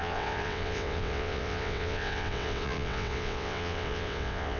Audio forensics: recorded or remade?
remade